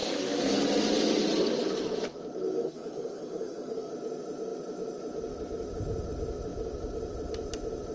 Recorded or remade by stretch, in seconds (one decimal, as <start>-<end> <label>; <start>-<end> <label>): 0.0-0.6 remade; 0.6-2.6 recorded; 2.6-3.9 remade; 3.9-7.9 recorded